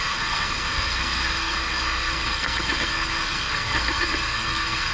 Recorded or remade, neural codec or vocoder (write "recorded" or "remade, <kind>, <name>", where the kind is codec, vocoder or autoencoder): remade, codec, SNAC